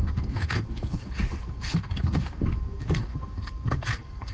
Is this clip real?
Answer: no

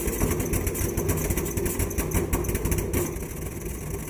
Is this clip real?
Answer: yes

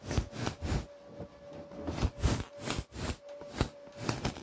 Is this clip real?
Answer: yes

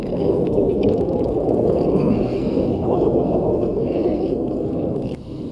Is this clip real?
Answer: no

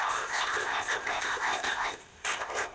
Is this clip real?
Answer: no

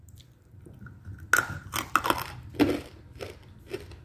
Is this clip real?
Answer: yes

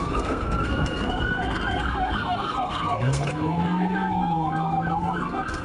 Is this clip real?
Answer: no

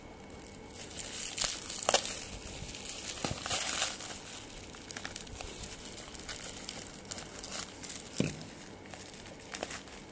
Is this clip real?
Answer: yes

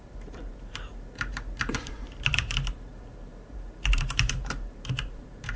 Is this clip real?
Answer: no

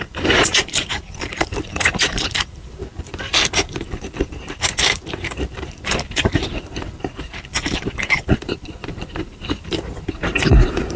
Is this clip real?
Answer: no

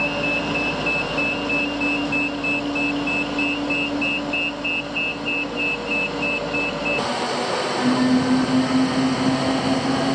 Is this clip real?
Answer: yes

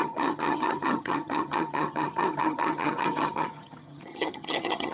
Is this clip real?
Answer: no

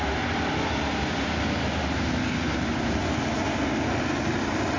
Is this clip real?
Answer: yes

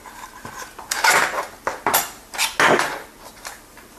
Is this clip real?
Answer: yes